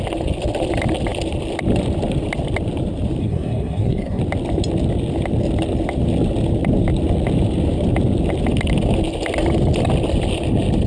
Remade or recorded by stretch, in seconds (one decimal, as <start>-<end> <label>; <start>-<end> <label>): 0.0-3.2 recorded; 3.2-4.2 remade; 4.2-10.9 recorded